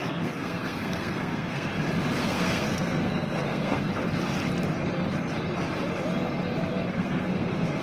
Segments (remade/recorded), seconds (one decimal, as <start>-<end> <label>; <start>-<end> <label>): 0.0-1.7 remade; 1.7-2.2 recorded; 2.2-3.9 remade; 3.9-6.9 recorded; 6.9-7.8 remade